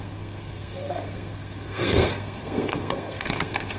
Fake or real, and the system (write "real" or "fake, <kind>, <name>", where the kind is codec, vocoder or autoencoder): fake, codec, SNAC